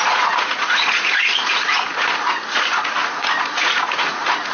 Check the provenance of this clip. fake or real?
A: fake